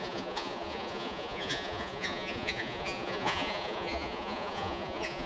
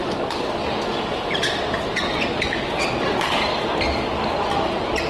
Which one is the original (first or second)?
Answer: second